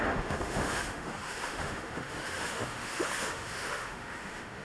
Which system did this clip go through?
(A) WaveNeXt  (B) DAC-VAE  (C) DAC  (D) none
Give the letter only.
B